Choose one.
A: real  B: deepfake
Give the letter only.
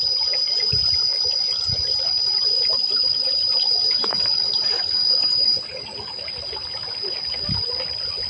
B